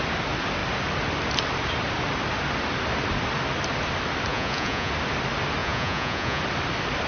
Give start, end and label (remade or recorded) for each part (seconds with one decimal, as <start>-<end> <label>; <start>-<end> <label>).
0.0-4.3 recorded; 4.3-4.9 remade; 4.9-5.6 recorded; 5.6-6.4 remade; 6.4-7.1 recorded